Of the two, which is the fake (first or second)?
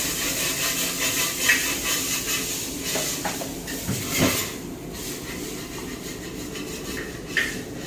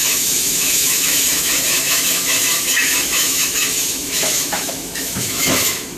second